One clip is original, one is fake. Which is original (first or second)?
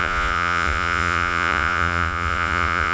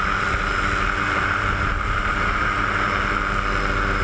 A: second